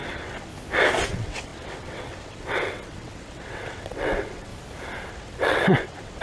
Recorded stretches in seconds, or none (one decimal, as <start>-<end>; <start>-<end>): 0.5-1.1; 4.5-5.1